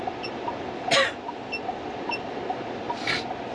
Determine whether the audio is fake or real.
real